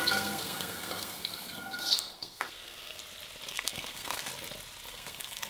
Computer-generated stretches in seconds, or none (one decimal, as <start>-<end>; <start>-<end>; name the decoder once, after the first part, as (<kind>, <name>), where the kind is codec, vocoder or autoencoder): 0.0-3.0 (codec, SNAC); 3.5-4.3; 4.9-5.5